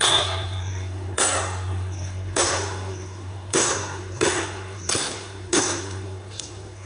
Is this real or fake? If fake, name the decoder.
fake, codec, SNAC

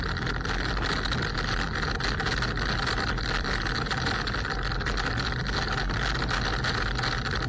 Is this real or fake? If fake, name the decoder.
real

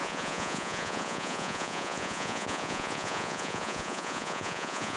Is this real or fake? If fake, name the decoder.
fake, vocoder, Vocos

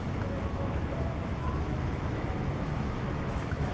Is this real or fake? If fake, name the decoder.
fake, autoencoder, DAC-VAE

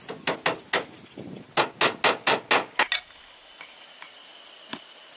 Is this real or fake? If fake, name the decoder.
real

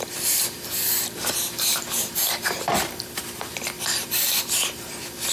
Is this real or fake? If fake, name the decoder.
fake, vocoder, BigVGAN v2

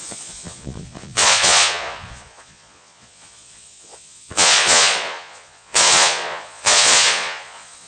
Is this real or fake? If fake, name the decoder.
fake, vocoder, Vocos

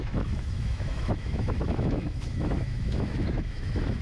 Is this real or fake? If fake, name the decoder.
fake, autoencoder, DAC-VAE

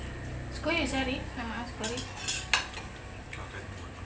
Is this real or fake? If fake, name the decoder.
real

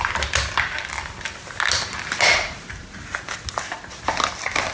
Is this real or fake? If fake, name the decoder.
real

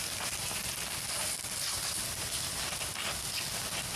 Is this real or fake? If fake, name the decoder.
fake, vocoder, BigVGAN v2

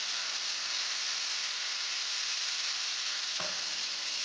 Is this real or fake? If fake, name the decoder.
real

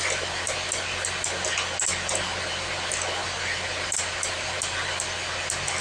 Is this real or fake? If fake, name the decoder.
real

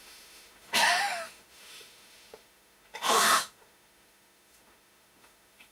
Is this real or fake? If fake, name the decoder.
fake, autoencoder, DAC-VAE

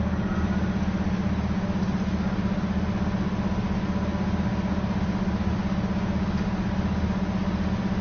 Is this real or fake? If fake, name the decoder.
real